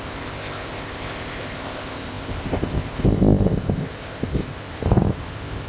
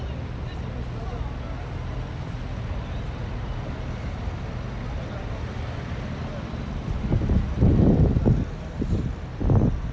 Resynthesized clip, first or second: first